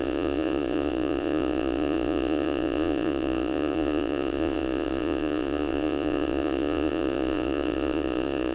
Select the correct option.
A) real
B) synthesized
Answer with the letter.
B